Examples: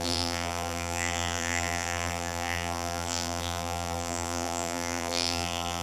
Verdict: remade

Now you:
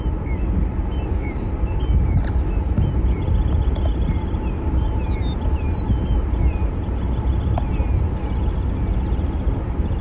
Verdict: recorded